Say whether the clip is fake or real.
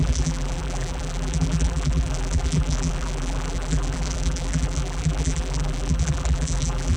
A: fake